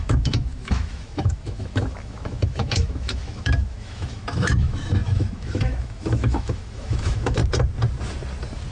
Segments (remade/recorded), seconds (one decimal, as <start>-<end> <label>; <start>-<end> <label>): 0.0-7.4 remade; 7.4-8.7 recorded